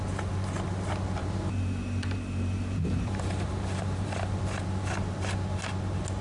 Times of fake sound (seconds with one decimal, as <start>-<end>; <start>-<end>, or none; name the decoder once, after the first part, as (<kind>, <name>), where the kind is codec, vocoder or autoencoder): 1.2-4.4 (vocoder, BigVGAN v2)